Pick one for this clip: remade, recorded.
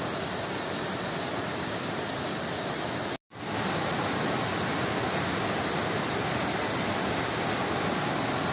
recorded